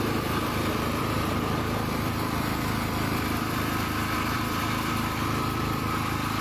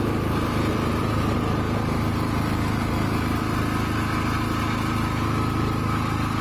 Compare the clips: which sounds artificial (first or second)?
first